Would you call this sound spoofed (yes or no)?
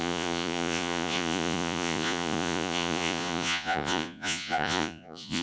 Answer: yes